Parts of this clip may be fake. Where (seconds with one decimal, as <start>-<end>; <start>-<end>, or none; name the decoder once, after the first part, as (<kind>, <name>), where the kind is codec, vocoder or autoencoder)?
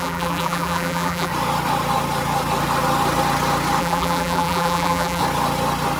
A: 0.0-1.3 (vocoder, BigVGAN v2); 3.8-5.2